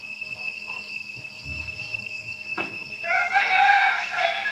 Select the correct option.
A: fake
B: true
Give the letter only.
A